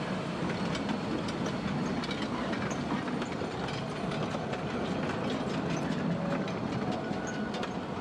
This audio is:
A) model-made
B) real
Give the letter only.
B